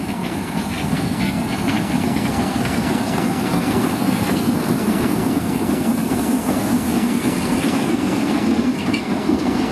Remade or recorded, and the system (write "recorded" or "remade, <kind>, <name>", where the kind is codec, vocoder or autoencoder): remade, codec, SNAC